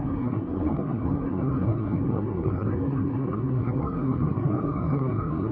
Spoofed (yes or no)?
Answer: yes